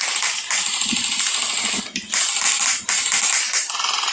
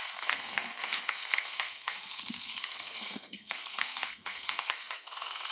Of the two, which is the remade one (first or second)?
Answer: second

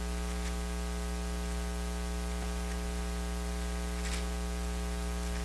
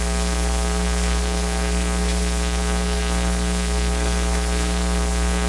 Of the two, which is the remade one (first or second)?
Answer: second